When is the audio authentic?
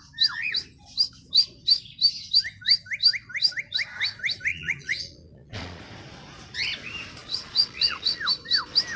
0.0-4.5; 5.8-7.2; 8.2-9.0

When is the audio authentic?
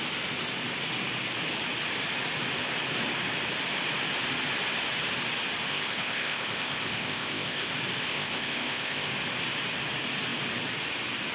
0.0-5.7; 7.7-8.1; 9.1-11.3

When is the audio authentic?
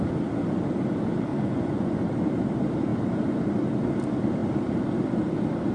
0.0-1.3; 2.0-5.7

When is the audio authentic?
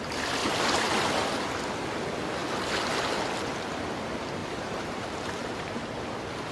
0.0-4.4; 5.8-6.5